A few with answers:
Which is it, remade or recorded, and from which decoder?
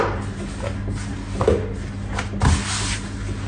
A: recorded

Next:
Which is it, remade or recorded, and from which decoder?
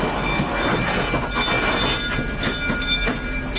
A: recorded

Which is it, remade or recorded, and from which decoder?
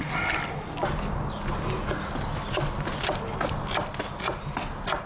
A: recorded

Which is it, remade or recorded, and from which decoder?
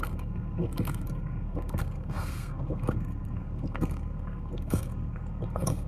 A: remade, codec, SNAC